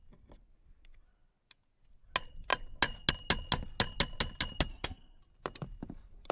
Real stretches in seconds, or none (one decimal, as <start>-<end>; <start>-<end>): 0.0-4.7; 5.2-6.3